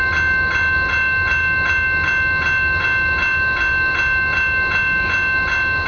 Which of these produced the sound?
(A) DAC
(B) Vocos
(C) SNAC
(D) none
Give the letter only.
D